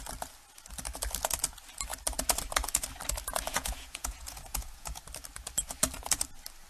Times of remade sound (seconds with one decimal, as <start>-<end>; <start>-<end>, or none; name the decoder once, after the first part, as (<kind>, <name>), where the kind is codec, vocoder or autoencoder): 3.5-5.0 (vocoder, Vocos)